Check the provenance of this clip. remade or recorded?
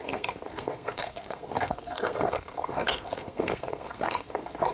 remade